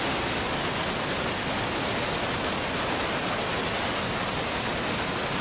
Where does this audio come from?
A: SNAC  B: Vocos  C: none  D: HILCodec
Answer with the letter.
C